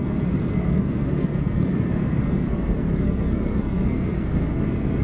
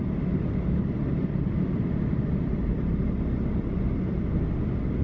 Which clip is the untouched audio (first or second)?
second